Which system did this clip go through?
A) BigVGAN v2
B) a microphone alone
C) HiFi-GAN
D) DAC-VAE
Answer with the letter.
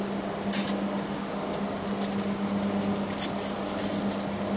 B